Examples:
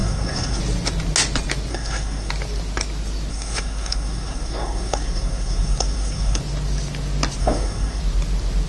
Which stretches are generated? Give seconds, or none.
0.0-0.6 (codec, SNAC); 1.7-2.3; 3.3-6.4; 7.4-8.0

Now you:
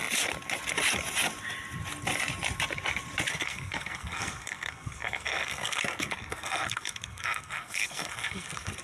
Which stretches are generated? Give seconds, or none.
3.3-8.8 (codec, SNAC)

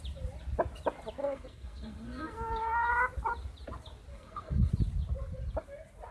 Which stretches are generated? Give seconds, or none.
1.2-2.9 (codec, SNAC); 4.1-4.7

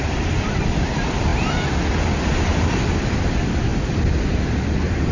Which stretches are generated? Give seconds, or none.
none

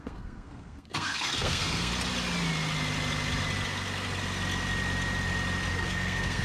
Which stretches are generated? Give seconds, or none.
0.0-1.9 (codec, SNAC); 5.7-6.4

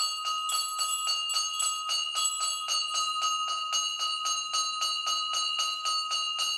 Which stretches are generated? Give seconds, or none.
none